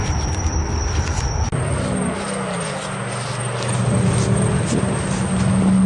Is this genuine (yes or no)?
yes